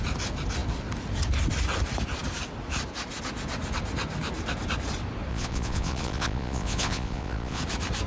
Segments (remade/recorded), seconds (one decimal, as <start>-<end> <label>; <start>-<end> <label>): 0.0-5.3 recorded; 5.3-7.6 remade; 7.6-8.1 recorded